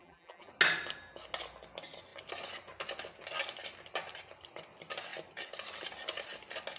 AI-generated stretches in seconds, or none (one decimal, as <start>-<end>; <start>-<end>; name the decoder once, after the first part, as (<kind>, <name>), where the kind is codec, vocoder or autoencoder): 0.0-0.5 (vocoder, BigVGAN v2)